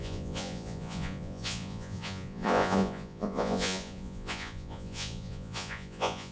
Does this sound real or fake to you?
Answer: fake